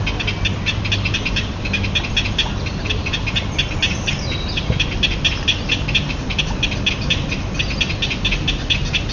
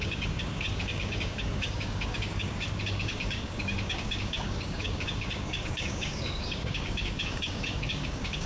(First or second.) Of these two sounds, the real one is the first